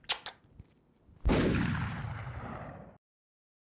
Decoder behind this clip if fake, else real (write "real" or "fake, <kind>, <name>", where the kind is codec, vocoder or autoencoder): real